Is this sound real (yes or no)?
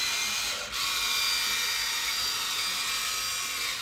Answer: yes